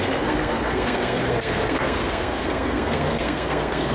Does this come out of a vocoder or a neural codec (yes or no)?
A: yes